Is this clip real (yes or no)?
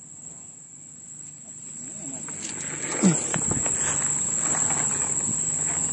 yes